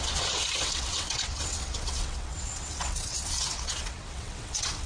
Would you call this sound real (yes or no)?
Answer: no